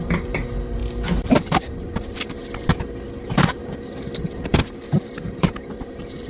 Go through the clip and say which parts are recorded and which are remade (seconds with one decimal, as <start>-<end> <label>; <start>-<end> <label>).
0.0-0.8 remade; 0.8-1.3 recorded; 1.3-2.4 remade; 2.4-3.2 recorded; 3.2-6.3 remade